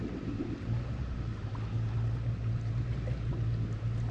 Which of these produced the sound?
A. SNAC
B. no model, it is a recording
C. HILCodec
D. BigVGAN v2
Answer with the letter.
B